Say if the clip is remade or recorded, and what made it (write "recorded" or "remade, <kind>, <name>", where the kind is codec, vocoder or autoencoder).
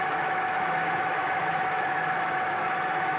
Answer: remade, autoencoder, DAC-VAE